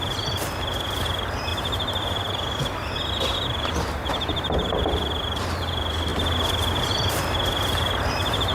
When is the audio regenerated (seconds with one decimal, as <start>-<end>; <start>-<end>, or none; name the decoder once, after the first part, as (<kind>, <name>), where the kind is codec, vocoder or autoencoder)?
0.0-8.5 (vocoder, BigVGAN v2)